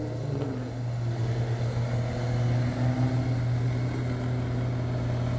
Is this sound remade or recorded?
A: recorded